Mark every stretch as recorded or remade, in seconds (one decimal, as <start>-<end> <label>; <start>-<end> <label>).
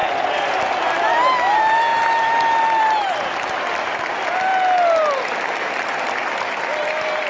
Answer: 0.0-0.5 remade; 0.5-7.3 recorded